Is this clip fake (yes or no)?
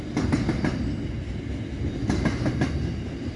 no